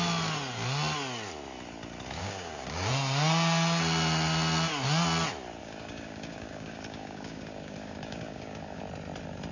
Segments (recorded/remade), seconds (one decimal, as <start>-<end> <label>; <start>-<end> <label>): 0.0-2.2 recorded; 2.2-2.9 remade; 2.9-5.6 recorded; 5.6-8.8 remade; 8.8-9.5 recorded